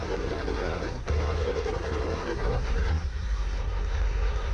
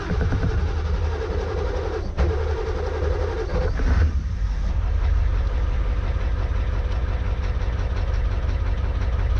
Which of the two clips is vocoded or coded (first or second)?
first